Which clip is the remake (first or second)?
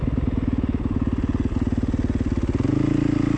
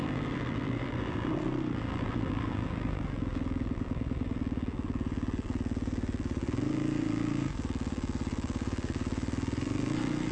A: second